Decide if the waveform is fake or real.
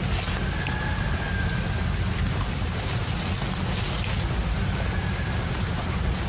real